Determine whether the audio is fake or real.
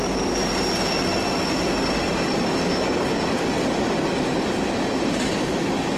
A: real